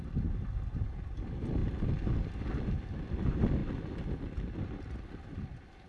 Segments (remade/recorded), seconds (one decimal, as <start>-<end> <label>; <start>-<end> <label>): 0.0-5.9 recorded